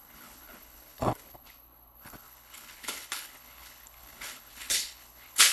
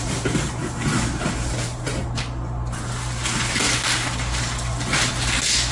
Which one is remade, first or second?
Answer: first